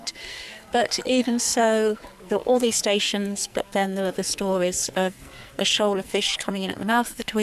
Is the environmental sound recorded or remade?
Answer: remade